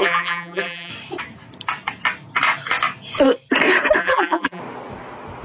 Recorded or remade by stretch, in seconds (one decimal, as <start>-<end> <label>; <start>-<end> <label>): 0.0-0.9 remade; 0.9-4.0 recorded; 4.0-4.6 remade; 4.6-5.4 recorded